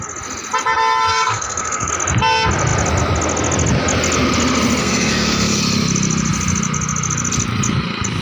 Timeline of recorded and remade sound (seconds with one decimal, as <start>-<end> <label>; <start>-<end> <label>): 0.0-1.1 recorded; 1.1-1.9 remade; 1.9-4.8 recorded; 4.8-5.6 remade; 5.6-8.2 recorded